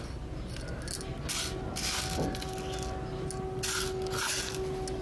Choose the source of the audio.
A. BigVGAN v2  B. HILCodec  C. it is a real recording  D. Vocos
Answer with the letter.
C